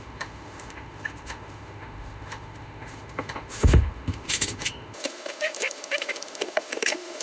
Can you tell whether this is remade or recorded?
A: remade